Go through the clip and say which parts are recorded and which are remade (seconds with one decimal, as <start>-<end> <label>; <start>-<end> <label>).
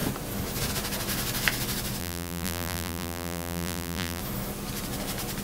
0.0-2.0 recorded; 2.0-4.2 remade; 4.2-5.4 recorded